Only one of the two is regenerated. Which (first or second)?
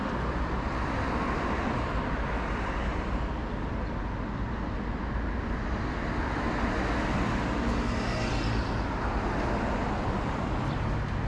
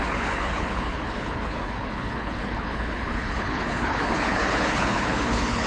second